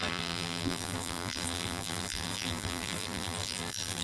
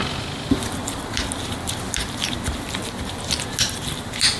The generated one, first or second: first